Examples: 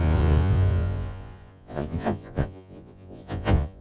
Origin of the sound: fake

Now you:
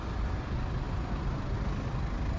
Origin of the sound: fake